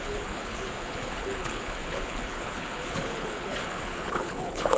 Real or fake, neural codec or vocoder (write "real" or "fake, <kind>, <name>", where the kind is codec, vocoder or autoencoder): fake, codec, HILCodec